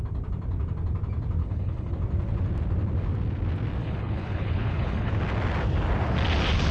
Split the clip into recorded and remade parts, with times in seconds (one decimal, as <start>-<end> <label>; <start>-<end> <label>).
0.0-1.4 recorded; 1.4-1.9 remade; 1.9-3.8 recorded; 3.8-5.1 remade; 5.1-6.7 recorded